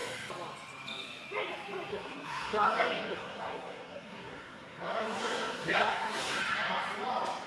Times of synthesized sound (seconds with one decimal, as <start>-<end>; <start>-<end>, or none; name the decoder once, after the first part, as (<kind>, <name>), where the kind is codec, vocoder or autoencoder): 1.9-6.4 (codec, SNAC)